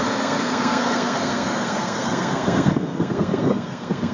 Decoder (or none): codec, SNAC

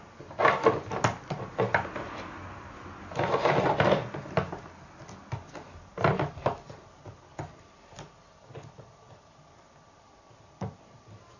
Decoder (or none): none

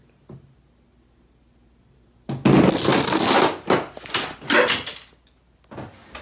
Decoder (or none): none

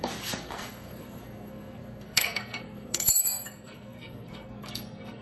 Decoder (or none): codec, SNAC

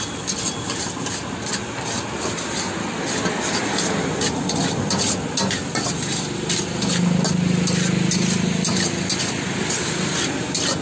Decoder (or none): none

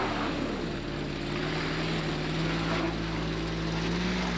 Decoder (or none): none